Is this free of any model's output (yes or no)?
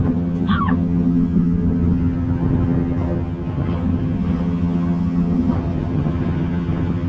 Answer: no